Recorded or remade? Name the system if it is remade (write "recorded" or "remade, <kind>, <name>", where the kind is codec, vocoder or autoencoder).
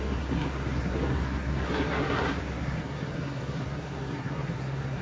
remade, codec, SNAC